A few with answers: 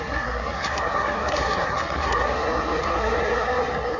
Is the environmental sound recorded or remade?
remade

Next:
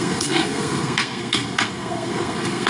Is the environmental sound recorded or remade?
remade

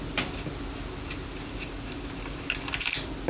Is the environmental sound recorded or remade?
recorded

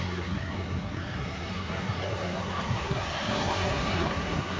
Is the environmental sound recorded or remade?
remade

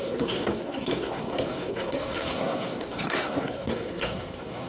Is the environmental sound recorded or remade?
remade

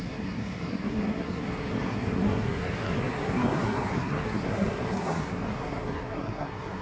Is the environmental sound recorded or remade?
remade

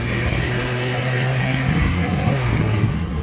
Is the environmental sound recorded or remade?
remade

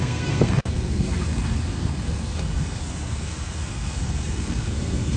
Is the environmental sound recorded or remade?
remade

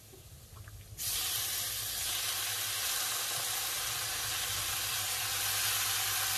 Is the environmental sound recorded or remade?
recorded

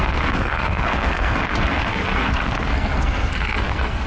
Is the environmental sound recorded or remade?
remade